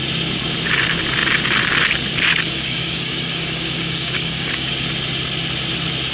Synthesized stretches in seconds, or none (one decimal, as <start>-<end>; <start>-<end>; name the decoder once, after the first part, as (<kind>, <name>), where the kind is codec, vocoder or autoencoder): 2.3-4.7 (codec, DAC)

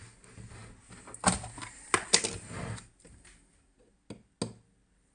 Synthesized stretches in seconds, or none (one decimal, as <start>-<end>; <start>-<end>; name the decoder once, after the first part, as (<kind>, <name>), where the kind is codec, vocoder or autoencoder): none

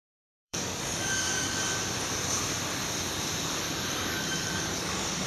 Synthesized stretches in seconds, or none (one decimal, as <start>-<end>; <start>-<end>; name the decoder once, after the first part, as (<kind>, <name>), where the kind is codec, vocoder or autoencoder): 0.0-1.6 (codec, DAC); 3.6-5.3

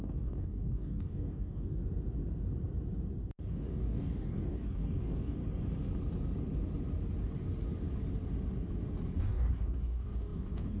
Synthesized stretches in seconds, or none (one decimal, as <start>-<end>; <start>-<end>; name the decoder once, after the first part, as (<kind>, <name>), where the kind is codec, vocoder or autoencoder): 0.0-1.8 (codec, DAC); 3.5-5.4; 9.2-10.8

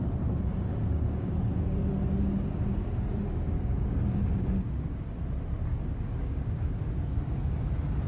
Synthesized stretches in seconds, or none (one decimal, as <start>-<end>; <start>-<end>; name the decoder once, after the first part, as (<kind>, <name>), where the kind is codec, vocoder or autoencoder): 0.5-1.9 (codec, DAC); 2.7-5.2; 5.7-6.9

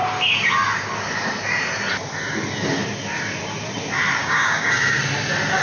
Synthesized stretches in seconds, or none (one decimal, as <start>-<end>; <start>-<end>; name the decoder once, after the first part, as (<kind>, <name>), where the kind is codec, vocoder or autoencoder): 4.2-5.0 (codec, DAC)

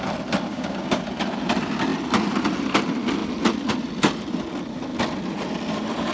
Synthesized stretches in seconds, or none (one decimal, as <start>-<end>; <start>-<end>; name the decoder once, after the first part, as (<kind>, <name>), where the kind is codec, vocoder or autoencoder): 0.5-1.0 (codec, DAC)

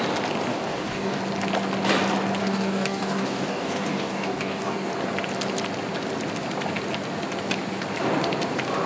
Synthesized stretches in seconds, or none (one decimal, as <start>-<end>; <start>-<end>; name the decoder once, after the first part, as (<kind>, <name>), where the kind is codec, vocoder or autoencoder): 0.5-1.2 (codec, DAC); 2.4-4.9